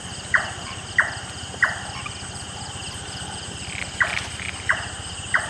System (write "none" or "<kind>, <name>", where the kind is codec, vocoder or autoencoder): none